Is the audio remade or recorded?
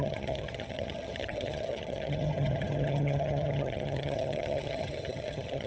remade